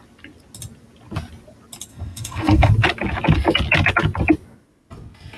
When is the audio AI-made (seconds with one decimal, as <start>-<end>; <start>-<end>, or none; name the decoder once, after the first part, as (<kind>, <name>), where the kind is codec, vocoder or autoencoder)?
1.9-2.7 (codec, SNAC)